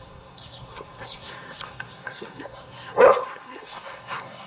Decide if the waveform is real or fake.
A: fake